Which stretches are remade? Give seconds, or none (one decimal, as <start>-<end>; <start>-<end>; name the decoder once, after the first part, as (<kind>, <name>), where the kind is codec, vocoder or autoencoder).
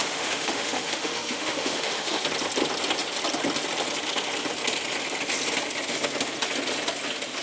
0.0-2.2 (autoencoder, DAC-VAE)